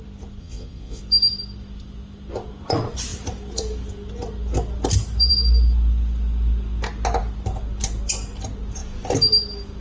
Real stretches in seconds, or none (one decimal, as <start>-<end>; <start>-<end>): 0.0-0.4; 1.0-9.8